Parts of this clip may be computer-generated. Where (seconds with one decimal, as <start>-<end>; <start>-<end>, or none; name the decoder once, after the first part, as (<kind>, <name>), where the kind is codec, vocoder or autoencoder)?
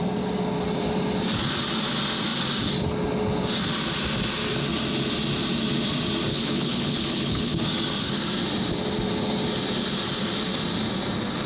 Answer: 6.3-7.6 (codec, HILCodec)